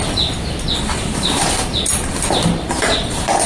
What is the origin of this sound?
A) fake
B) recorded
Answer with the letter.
B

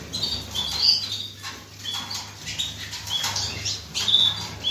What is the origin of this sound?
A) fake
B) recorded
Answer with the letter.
B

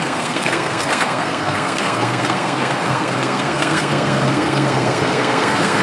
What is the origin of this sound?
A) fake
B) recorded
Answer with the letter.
A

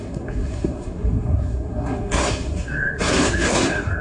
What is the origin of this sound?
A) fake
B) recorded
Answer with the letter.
A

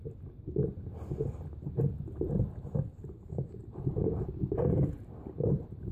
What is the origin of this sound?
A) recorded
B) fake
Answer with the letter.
A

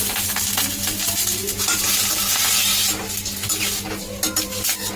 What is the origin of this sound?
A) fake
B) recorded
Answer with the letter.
B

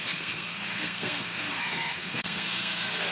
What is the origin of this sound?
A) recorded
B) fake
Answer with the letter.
B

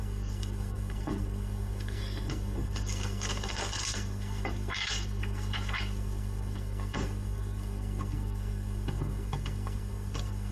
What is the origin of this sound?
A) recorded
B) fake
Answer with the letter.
B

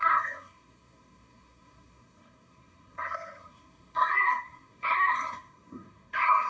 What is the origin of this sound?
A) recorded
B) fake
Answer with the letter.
B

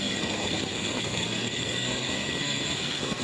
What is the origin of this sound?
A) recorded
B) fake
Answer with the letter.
B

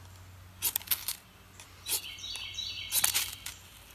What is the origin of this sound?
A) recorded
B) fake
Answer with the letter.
A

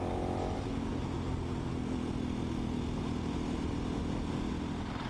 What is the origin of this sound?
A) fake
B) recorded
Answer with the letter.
B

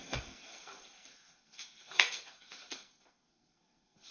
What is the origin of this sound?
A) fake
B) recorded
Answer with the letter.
A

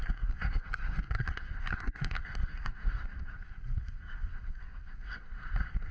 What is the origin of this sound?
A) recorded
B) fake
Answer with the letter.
B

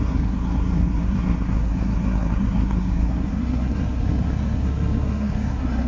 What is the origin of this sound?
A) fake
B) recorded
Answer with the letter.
A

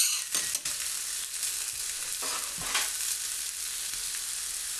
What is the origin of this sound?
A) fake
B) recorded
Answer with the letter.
B